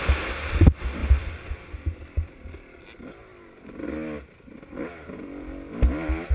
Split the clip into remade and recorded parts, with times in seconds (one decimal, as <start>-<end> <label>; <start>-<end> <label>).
0.0-1.0 recorded; 1.0-2.3 remade; 2.3-6.3 recorded